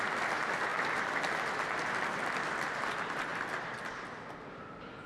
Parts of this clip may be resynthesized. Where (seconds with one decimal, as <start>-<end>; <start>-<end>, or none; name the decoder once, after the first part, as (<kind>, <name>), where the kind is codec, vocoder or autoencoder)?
3.3-3.8 (vocoder, BigVGAN v2)